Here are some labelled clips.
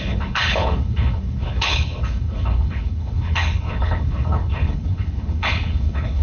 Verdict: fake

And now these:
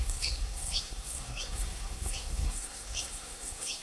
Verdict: fake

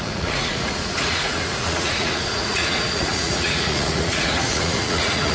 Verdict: fake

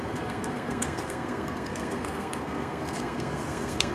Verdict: fake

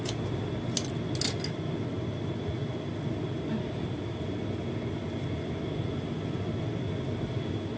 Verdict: real